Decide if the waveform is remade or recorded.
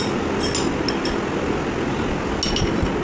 recorded